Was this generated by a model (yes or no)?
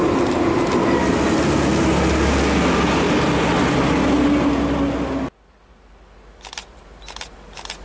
no